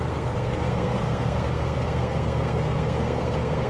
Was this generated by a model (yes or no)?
yes